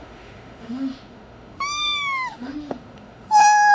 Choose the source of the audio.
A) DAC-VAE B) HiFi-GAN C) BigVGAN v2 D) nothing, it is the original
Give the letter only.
A